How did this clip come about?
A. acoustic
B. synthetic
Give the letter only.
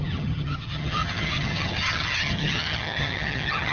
B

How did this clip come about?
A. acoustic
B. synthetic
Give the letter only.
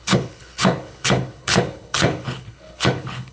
B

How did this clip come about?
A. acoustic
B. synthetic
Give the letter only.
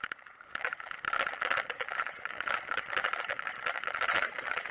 B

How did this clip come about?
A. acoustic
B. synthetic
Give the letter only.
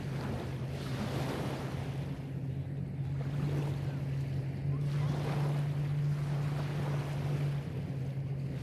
A